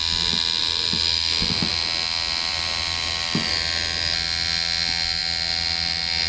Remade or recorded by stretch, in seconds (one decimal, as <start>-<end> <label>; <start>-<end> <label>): 0.0-0.6 recorded; 0.6-1.7 remade; 1.7-2.5 recorded; 2.5-3.5 remade; 3.5-6.3 recorded